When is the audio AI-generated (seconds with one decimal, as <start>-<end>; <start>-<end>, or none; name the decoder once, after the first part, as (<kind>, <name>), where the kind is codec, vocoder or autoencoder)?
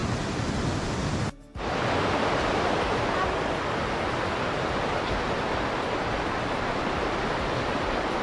none